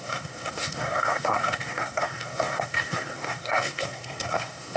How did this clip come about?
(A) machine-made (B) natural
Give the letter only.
A